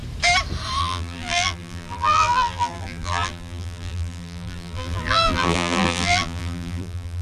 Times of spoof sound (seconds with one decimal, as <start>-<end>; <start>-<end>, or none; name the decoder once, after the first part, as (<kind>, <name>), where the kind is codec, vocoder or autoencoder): 0.8-7.2 (vocoder, BigVGAN v2)